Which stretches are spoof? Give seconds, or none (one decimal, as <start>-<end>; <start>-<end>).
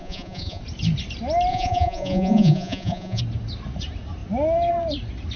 0.0-0.6; 1.5-3.2